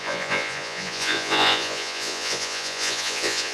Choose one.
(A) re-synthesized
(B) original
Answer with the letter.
A